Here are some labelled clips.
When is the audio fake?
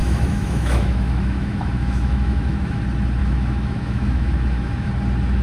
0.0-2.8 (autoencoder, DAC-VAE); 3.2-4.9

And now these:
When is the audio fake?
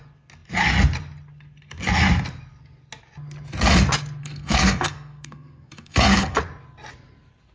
4.2-6.4 (codec, SNAC)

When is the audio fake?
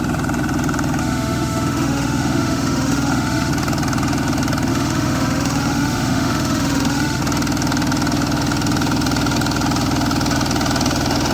1.0-3.5 (autoencoder, DAC-VAE); 4.7-7.2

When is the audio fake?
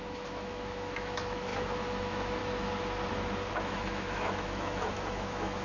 0.0-2.4 (autoencoder, DAC-VAE); 3.5-5.6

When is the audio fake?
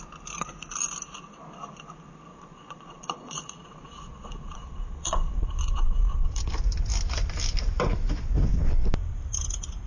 2.3-6.4 (vocoder, Vocos)